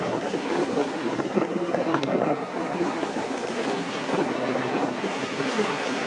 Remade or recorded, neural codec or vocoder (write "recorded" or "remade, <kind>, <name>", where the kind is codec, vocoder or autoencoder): remade, codec, SNAC